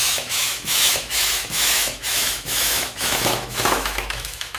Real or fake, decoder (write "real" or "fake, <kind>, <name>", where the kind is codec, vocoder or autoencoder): fake, autoencoder, DAC-VAE